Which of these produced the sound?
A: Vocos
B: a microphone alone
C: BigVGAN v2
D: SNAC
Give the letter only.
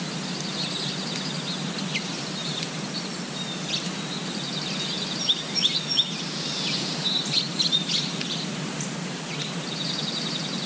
B